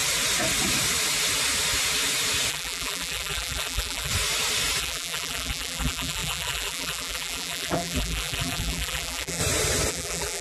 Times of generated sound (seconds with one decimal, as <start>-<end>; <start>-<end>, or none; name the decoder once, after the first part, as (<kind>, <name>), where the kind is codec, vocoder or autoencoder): 2.5-4.1 (vocoder, BigVGAN v2); 4.8-9.4; 9.9-10.4

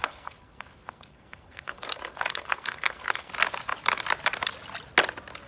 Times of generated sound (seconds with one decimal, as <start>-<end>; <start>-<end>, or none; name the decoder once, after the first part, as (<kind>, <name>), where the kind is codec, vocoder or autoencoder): 0.0-3.3 (codec, SNAC)

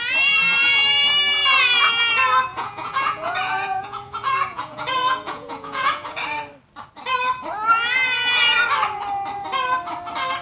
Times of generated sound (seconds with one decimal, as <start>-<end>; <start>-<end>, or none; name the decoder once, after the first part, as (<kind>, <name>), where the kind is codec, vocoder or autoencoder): 2.5-6.2 (vocoder, Vocos)

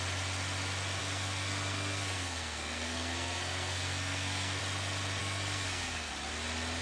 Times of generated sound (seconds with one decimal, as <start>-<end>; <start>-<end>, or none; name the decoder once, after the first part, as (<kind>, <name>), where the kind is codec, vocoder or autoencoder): 1.0-4.6 (codec, SNAC); 5.2-6.1

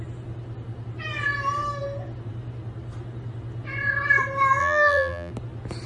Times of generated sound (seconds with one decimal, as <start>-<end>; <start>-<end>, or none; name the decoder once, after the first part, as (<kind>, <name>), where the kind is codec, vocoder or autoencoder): 4.6-5.3 (vocoder, BigVGAN v2)

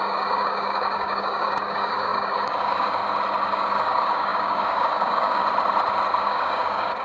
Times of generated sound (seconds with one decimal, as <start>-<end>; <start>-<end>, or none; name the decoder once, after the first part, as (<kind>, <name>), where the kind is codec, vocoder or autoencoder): 0.0-3.0 (codec, DAC); 3.5-5.4; 6.2-7.0

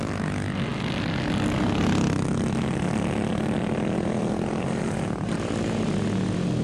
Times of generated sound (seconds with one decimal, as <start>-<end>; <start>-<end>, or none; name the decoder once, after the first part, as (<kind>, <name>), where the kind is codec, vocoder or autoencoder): none

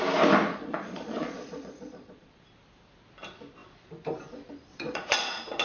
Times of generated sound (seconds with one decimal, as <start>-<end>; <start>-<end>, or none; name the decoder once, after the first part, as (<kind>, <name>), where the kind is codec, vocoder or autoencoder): 0.5-2.4 (vocoder, Vocos); 4.7-5.6